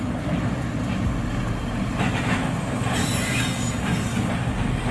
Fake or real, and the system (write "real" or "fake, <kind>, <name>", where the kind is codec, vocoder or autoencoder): real